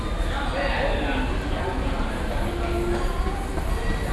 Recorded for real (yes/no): yes